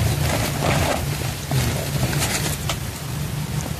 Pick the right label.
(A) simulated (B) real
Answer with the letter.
B